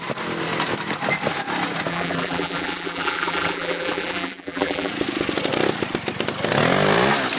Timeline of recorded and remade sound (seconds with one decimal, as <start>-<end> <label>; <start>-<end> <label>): 0.0-1.9 recorded; 1.9-4.9 remade; 4.9-7.4 recorded